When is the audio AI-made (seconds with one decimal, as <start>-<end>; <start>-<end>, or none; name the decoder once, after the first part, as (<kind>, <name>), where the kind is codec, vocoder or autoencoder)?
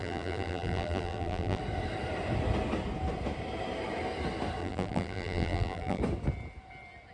0.0-1.6 (vocoder, BigVGAN v2); 4.6-6.0